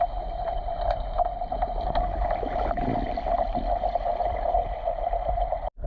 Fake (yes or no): no